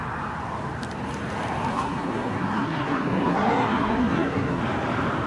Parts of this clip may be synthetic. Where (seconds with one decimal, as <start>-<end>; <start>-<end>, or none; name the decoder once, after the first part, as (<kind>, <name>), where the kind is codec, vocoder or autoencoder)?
1.7-4.6 (codec, SNAC)